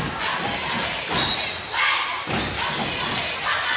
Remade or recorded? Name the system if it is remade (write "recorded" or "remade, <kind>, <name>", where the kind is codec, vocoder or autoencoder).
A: recorded